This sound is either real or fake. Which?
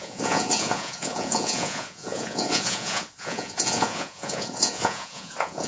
fake